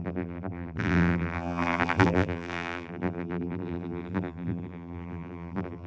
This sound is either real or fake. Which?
fake